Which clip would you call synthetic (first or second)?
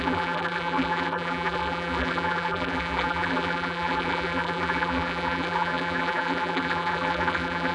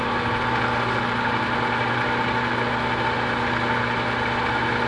first